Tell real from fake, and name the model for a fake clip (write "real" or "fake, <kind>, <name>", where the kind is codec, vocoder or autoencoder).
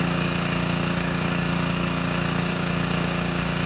fake, codec, DAC